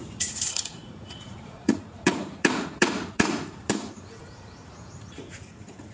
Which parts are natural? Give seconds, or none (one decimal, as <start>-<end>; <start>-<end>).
none